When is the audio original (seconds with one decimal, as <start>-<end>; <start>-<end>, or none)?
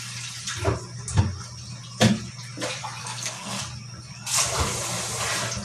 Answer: 0.0-3.0; 3.6-5.6